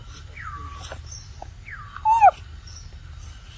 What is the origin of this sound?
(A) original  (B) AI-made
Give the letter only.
A